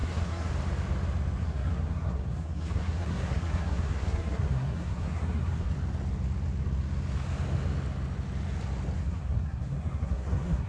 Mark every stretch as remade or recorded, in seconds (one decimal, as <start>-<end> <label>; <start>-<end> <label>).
0.0-0.5 remade; 0.5-1.4 recorded; 1.4-5.7 remade; 5.7-9.0 recorded; 9.0-10.7 remade